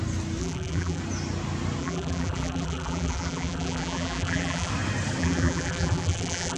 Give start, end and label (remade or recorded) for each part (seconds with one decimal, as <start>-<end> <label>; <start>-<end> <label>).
0.0-0.4 recorded; 0.4-1.0 remade; 1.0-1.8 recorded; 1.8-4.7 remade; 4.7-5.2 recorded; 5.2-6.6 remade